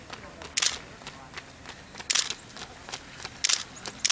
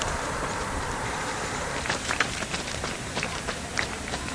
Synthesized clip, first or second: second